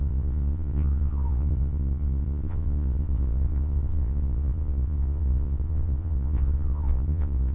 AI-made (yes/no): yes